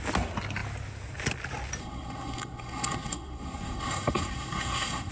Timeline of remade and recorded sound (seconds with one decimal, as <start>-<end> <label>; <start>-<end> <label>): 0.0-1.8 recorded; 1.8-5.1 remade